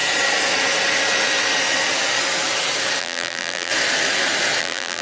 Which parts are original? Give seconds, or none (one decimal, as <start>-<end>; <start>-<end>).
0.0-3.0; 3.7-4.6